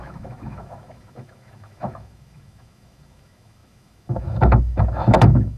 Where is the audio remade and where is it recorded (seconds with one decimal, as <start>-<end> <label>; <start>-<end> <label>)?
0.0-5.6 remade